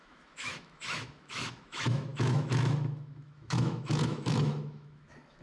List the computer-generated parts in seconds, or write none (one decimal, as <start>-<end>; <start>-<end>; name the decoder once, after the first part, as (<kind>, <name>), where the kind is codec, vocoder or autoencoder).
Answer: 0.0-5.4 (autoencoder, DAC-VAE)